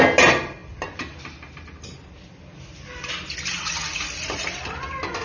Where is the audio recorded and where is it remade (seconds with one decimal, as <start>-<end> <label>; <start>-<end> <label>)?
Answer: 0.0-5.2 recorded